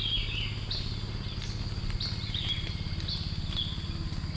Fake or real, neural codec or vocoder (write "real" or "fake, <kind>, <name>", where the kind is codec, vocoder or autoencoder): real